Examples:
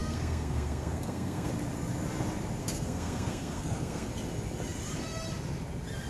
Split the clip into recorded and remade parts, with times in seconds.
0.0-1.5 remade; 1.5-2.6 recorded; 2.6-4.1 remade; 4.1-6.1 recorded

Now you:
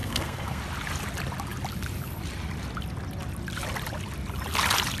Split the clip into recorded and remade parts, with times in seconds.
0.0-0.6 remade; 0.6-5.0 recorded

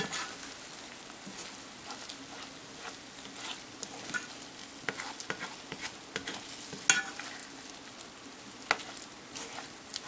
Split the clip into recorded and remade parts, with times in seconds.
0.0-10.1 recorded